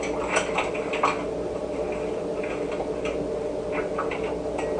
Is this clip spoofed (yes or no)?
no